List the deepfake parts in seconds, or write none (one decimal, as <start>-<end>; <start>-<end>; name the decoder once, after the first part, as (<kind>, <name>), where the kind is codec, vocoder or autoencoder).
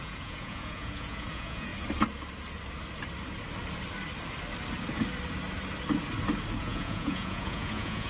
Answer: 0.0-1.7 (vocoder, Vocos); 6.6-8.1